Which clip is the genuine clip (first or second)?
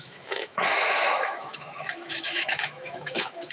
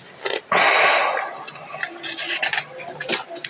second